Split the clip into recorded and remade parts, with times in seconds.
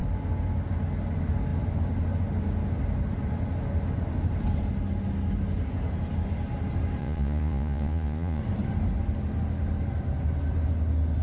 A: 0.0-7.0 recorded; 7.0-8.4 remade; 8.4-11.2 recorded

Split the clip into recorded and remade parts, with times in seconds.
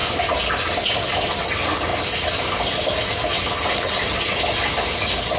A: 0.0-5.4 remade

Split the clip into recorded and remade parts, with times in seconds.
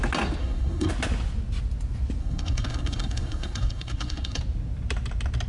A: 0.0-0.4 recorded; 0.4-0.9 remade; 0.9-2.2 recorded; 2.2-4.4 remade; 4.4-5.5 recorded